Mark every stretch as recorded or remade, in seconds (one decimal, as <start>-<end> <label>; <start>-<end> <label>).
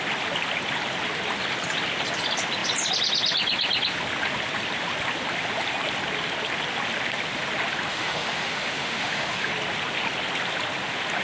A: 0.0-7.9 recorded; 7.9-9.5 remade; 9.5-11.2 recorded